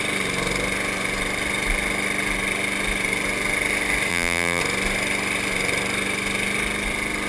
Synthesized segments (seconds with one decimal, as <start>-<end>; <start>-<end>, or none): 4.1-4.6